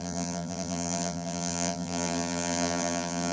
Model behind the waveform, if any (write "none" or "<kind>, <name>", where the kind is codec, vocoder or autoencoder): vocoder, BigVGAN v2